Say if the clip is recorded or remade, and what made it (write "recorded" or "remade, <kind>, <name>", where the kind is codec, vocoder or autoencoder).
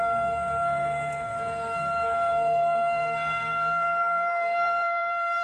remade, codec, SNAC